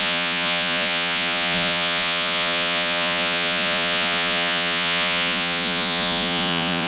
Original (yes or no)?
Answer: no